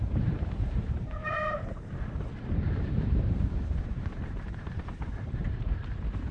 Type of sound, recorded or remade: remade